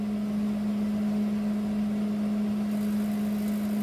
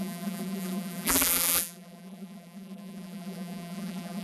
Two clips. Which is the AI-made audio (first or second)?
second